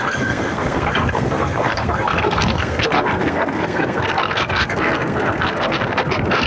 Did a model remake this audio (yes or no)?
yes